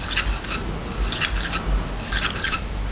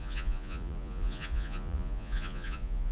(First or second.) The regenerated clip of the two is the second